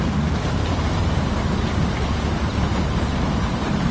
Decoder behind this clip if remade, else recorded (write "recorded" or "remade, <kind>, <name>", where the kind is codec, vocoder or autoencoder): remade, vocoder, BigVGAN v2